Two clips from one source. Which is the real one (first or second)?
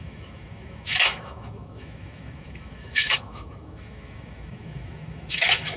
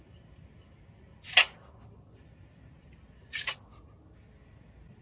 second